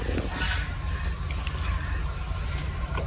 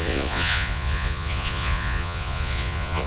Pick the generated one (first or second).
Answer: second